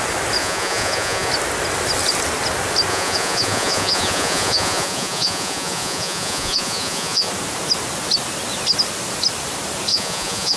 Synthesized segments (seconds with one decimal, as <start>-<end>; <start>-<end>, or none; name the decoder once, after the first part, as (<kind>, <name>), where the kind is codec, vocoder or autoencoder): 0.4-1.3 (vocoder, Vocos); 2.9-7.3; 9.9-10.6

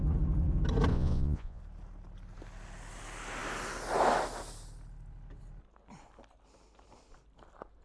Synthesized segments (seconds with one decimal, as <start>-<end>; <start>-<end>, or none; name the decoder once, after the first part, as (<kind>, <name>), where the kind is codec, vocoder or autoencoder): 0.9-1.6 (vocoder, Vocos)

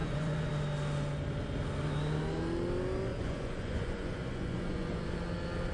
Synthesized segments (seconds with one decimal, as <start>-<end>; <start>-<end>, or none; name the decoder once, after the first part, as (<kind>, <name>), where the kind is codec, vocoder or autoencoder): 0.0-0.5 (vocoder, Vocos); 3.1-5.0

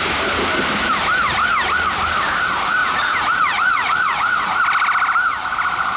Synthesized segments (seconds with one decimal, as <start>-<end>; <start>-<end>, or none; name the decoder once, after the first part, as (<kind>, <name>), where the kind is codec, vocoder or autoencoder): 2.8-4.6 (vocoder, Vocos)

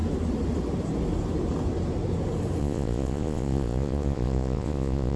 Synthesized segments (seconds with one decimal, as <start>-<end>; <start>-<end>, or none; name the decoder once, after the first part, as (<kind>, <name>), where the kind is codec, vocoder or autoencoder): 2.6-5.2 (vocoder, Vocos)

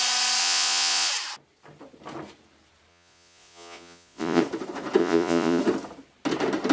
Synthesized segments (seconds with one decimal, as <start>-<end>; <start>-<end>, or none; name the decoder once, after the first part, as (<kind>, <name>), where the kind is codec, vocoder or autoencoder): 0.4-1.1 (vocoder, Vocos); 2.9-4.4; 5.0-5.6

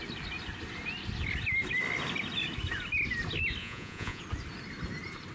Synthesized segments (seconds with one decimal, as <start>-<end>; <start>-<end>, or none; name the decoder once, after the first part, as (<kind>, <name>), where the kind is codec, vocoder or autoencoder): 3.6-4.2 (vocoder, Vocos)

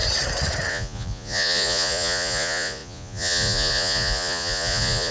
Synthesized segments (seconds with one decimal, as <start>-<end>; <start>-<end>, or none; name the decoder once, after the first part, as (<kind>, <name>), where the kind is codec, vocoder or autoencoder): 0.7-5.1 (vocoder, Vocos)